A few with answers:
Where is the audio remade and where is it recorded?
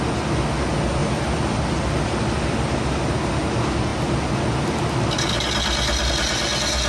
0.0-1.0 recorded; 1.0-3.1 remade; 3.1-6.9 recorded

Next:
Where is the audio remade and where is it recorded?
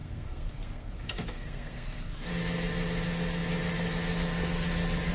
0.0-2.3 remade; 2.3-5.1 recorded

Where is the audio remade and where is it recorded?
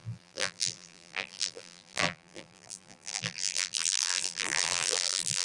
0.0-5.4 remade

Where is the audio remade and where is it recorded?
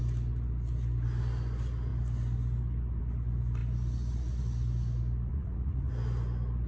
0.0-5.3 recorded; 5.3-5.9 remade; 5.9-6.7 recorded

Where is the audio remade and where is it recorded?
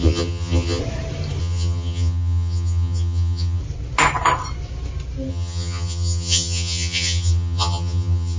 0.0-0.8 remade; 0.8-1.4 recorded; 1.4-3.6 remade; 3.6-5.3 recorded; 5.3-8.4 remade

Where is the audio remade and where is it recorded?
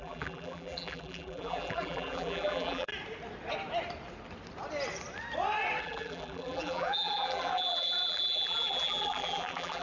0.0-2.9 remade; 2.9-5.8 recorded; 5.8-9.8 remade